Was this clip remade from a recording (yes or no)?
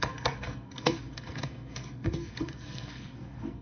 yes